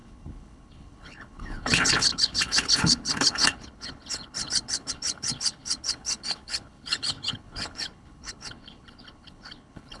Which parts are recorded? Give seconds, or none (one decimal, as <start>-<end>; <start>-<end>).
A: none